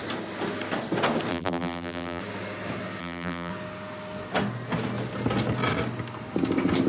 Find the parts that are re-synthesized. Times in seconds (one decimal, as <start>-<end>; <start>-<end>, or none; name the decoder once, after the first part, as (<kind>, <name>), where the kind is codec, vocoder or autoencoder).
1.3-2.2 (vocoder, BigVGAN v2); 3.0-3.5